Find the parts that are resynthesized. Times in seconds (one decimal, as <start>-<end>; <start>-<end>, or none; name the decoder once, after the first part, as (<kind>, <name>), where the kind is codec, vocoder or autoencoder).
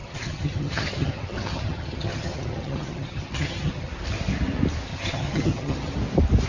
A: 0.0-3.9 (vocoder, HiFi-GAN); 4.9-5.9